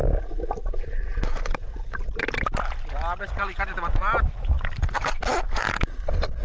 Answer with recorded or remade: recorded